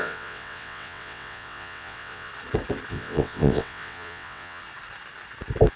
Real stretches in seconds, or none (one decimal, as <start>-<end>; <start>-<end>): 2.3-2.9; 4.6-5.8

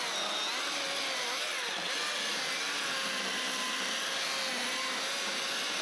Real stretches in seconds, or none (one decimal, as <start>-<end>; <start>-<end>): 0.0-5.8

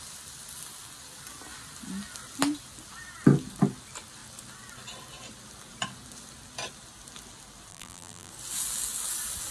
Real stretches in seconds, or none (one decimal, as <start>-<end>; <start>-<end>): 0.0-7.7; 8.3-9.5

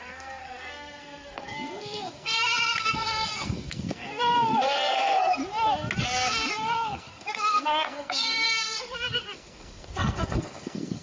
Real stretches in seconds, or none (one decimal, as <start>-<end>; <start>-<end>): 5.4-6.0

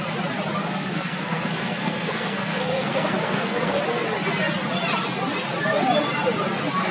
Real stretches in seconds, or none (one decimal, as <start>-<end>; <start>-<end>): 0.0-0.6; 3.8-6.9

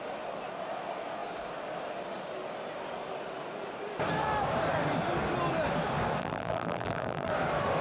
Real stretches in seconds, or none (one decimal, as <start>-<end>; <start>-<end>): 0.0-6.2; 7.3-7.8

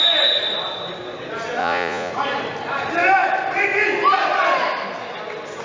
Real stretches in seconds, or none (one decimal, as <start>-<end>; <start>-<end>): 0.0-1.6; 2.1-5.6

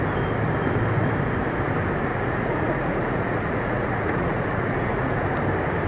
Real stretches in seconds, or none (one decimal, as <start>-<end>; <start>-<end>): 0.0-2.1; 5.3-5.9